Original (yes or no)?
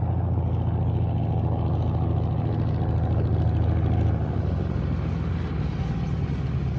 yes